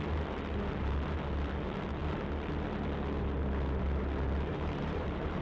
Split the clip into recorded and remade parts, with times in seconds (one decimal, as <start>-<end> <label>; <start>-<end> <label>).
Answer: 0.0-4.5 recorded; 4.5-5.4 remade